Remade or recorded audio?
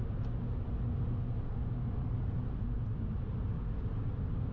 recorded